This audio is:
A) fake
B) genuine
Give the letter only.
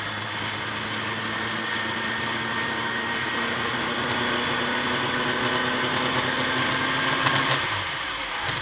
B